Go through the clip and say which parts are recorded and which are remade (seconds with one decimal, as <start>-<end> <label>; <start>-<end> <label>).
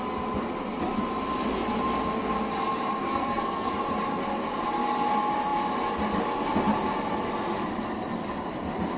0.0-3.0 recorded; 3.0-3.7 remade; 3.7-9.0 recorded